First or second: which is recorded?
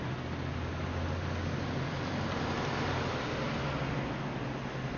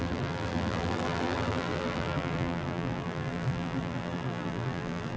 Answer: first